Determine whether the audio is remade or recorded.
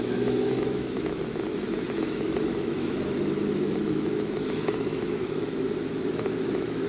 remade